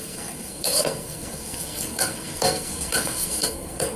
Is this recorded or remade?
remade